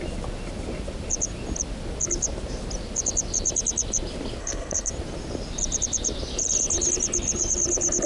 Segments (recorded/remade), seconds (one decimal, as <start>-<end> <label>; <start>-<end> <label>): 0.0-4.4 recorded; 4.4-4.9 remade; 4.9-8.1 recorded